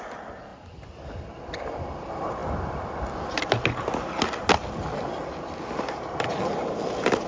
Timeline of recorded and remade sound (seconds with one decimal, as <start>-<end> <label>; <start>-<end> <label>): 0.0-7.3 recorded